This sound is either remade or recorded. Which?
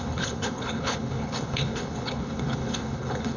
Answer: remade